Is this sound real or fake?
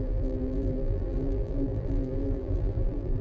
fake